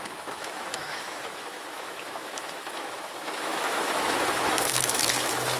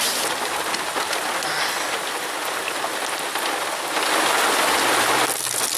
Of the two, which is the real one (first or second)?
second